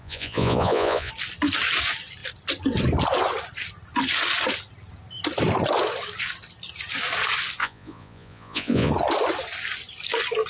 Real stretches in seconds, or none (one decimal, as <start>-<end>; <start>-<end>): 1.1-7.6; 8.9-10.5

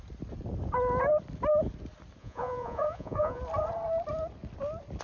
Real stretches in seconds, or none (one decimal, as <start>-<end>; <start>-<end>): 0.0-2.2; 3.4-5.0

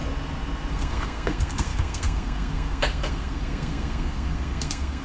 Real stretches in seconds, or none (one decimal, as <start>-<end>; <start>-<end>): 0.0-0.7

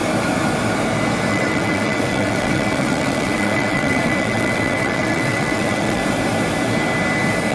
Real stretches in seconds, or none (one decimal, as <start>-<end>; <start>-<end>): 0.0-1.3; 6.0-7.5

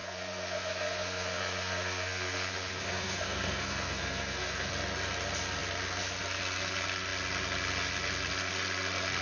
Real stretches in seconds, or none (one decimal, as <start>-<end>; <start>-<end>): 4.7-9.2

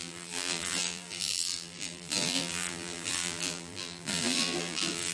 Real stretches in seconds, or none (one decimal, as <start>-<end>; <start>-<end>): none